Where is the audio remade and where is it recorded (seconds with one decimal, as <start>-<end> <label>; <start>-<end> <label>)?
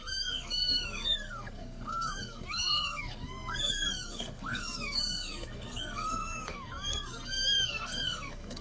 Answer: 0.0-8.6 remade